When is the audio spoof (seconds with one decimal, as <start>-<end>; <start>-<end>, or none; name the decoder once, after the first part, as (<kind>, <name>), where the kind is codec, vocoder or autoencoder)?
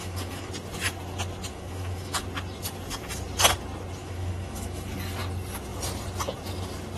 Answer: 0.0-0.5 (autoencoder, DAC-VAE); 1.5-2.2; 4.0-4.9